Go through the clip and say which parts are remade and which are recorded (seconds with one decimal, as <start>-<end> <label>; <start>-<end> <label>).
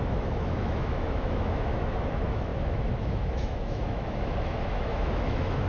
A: 0.0-5.7 remade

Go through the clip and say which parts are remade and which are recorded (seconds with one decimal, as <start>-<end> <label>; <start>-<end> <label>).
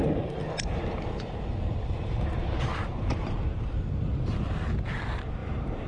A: 0.0-0.4 recorded; 0.4-3.9 remade; 3.9-5.4 recorded; 5.4-5.9 remade